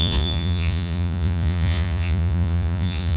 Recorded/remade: remade